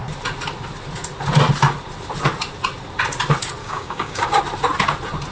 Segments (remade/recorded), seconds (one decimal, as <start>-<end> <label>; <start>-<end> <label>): 0.0-3.6 recorded; 3.6-4.4 remade; 4.4-5.3 recorded